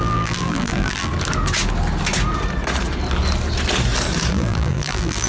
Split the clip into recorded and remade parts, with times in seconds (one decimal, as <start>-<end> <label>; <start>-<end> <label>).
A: 0.0-1.1 remade; 1.1-4.3 recorded; 4.3-5.3 remade